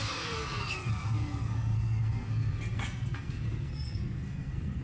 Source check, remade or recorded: remade